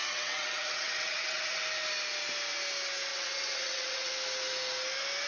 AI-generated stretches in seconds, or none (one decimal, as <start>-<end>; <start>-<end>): 0.0-1.6; 3.1-4.1